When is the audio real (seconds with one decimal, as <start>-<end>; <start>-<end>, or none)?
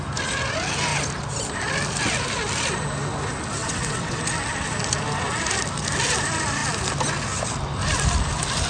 0.0-3.6; 4.2-8.7